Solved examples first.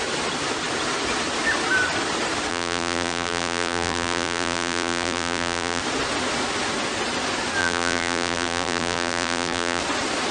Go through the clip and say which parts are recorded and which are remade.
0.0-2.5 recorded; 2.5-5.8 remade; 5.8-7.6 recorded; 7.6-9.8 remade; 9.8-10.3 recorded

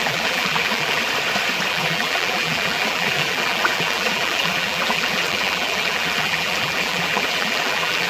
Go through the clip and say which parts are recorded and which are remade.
0.0-1.0 remade; 1.0-1.7 recorded; 1.7-8.1 remade

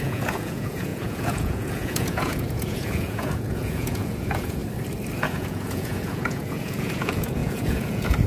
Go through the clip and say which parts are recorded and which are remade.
0.0-4.6 remade; 4.6-5.2 recorded; 5.2-8.3 remade

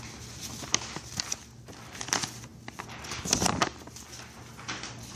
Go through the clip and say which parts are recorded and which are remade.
0.0-2.5 remade; 2.5-3.2 recorded; 3.2-5.2 remade

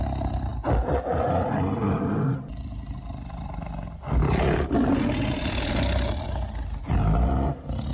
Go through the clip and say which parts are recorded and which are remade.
0.0-7.9 recorded

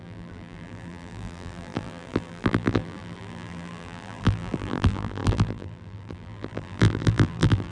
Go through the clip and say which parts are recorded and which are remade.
0.0-7.7 remade

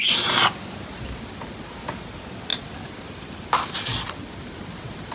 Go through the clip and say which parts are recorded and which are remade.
0.0-5.1 recorded

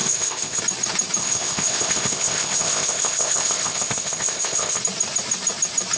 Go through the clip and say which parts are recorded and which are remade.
0.0-0.6 remade; 0.6-1.2 recorded; 1.2-4.8 remade; 4.8-6.0 recorded